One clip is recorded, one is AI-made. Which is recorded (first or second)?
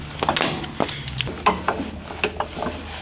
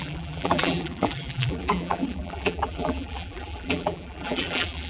first